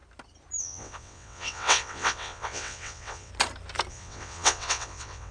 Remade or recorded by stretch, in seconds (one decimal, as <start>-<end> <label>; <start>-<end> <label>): 0.0-0.6 recorded; 0.6-3.3 remade; 3.3-3.9 recorded; 3.9-5.3 remade